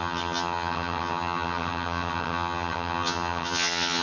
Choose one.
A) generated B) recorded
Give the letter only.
A